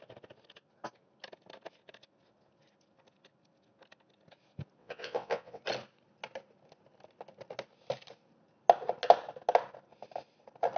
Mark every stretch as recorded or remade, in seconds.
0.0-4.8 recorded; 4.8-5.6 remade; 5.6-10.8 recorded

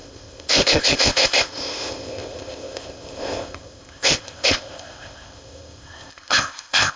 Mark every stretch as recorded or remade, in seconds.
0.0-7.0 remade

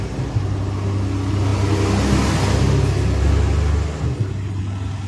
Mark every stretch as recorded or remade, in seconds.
0.0-5.1 recorded

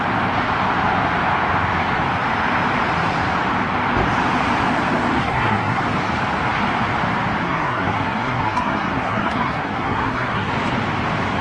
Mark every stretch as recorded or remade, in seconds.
0.0-5.2 recorded; 5.2-5.8 remade; 5.8-7.4 recorded; 7.4-10.5 remade; 10.5-11.4 recorded